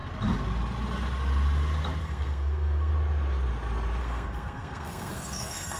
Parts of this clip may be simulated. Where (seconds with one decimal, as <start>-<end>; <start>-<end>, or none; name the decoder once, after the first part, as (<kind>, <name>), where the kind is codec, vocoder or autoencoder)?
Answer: 2.0-2.9 (codec, SNAC); 4.0-5.8